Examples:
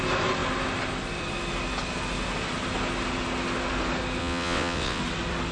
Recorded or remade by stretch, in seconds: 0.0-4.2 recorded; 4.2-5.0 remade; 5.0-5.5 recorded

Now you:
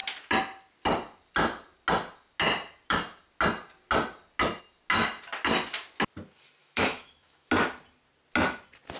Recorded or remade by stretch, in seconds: 0.0-6.6 recorded; 6.6-7.5 remade; 7.5-9.0 recorded